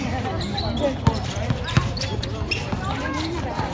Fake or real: real